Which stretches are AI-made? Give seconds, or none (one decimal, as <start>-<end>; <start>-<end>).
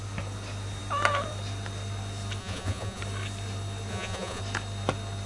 2.4-3.0; 3.9-4.4